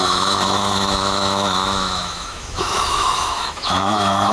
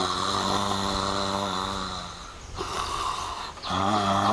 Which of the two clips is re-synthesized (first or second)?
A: first